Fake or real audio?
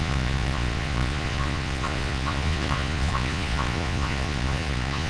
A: fake